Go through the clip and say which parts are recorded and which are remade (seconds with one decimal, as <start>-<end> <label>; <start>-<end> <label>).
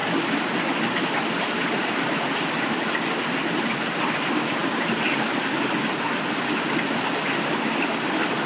0.0-8.5 recorded